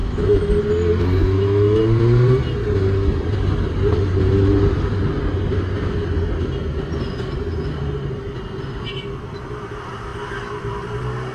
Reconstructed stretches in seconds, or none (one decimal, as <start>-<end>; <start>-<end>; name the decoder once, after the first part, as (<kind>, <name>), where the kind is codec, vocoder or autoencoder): 0.0-0.5 (autoencoder, DAC-VAE); 1.2-1.8